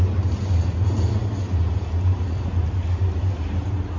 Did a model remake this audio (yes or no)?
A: no